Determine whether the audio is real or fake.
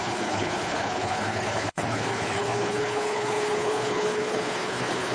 fake